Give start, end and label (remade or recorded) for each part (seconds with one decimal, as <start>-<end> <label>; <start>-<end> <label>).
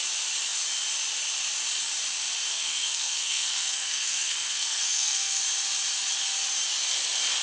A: 0.0-2.5 recorded; 2.5-5.4 remade; 5.4-7.4 recorded